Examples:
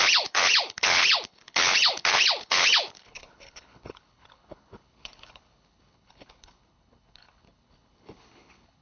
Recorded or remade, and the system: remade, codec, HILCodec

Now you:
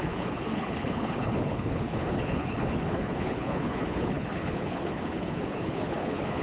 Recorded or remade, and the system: remade, codec, HILCodec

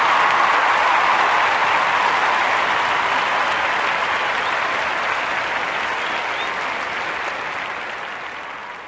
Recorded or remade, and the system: recorded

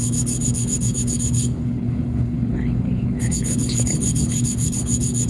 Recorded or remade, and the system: remade, codec, HILCodec